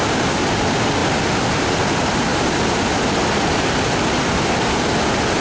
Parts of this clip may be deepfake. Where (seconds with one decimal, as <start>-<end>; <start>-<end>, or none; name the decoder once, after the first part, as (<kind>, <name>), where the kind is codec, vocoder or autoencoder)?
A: none